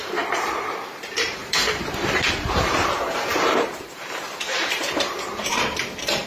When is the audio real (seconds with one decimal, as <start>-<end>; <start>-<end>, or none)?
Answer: none